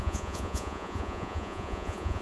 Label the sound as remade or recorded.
remade